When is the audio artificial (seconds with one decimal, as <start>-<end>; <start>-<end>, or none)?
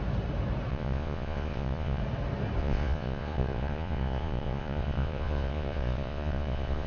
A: 0.7-2.0; 2.6-6.9